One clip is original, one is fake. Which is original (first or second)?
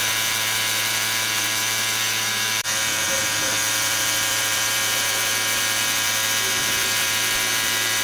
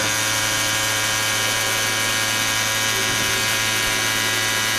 second